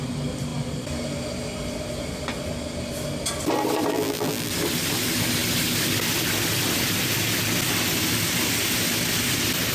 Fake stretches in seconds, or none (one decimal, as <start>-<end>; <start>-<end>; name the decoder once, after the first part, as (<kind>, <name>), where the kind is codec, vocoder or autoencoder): 3.9-4.5 (vocoder, BigVGAN v2)